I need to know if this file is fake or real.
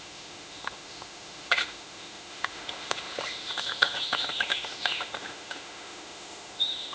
fake